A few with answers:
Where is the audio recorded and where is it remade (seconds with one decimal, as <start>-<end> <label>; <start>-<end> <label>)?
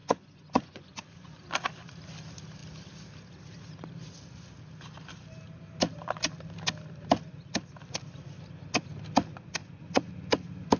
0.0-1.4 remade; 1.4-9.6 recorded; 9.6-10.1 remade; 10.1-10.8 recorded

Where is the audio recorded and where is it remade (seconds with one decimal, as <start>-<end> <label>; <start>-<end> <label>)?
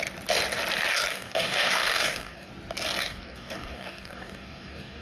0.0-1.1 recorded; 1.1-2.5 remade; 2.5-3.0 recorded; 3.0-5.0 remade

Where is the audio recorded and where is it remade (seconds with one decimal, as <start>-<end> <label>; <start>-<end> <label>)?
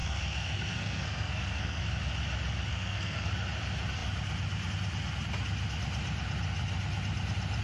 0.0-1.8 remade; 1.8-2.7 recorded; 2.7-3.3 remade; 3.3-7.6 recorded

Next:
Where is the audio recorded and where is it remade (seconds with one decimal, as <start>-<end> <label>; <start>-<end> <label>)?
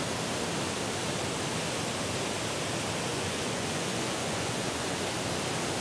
0.0-3.1 recorded; 3.1-5.0 remade; 5.0-5.8 recorded